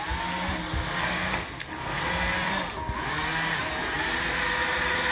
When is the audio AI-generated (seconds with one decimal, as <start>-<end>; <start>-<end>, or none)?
0.6-2.1